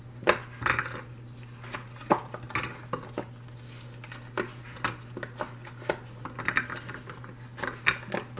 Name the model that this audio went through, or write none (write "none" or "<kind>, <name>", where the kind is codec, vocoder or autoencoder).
none